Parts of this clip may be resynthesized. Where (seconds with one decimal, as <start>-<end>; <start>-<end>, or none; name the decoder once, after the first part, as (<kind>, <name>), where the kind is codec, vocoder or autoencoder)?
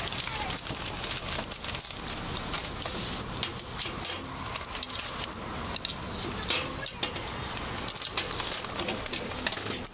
none